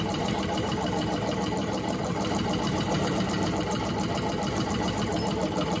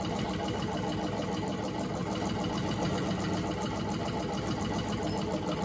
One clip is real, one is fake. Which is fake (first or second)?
first